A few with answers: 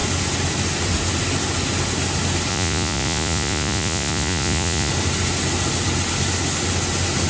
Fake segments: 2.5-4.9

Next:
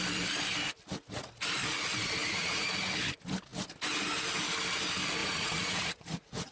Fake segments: 2.2-2.7; 5.2-6.5

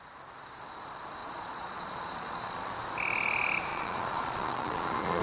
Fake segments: 1.2-2.7; 3.7-5.2

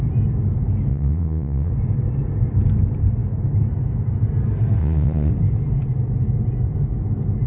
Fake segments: 0.9-1.7; 4.8-5.3